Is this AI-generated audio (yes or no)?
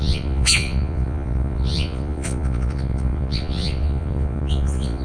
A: yes